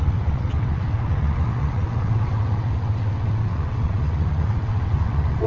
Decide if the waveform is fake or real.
fake